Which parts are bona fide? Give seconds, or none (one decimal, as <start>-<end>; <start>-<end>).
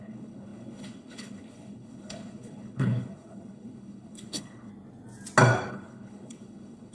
4.7-5.7